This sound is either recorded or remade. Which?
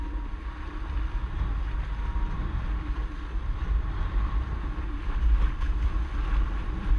recorded